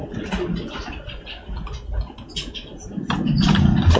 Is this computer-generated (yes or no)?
no